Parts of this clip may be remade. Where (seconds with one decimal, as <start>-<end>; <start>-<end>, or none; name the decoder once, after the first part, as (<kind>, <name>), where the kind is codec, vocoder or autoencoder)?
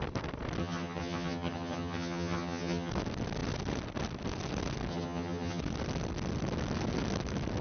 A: 0.6-2.9 (vocoder, HiFi-GAN); 4.9-5.6